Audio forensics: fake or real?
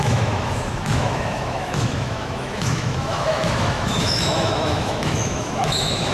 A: fake